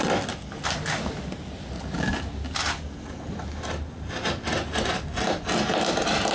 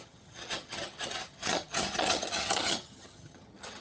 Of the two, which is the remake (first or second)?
second